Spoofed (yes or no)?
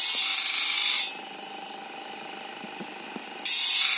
no